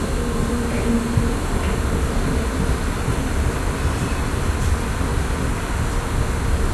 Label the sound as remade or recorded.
recorded